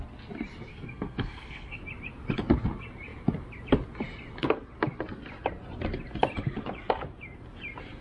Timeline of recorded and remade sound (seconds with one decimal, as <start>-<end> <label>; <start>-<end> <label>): 0.0-0.7 recorded; 0.7-1.8 remade; 1.8-8.0 recorded